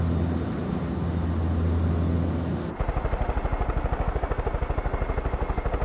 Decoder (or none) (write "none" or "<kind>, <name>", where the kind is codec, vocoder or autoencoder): none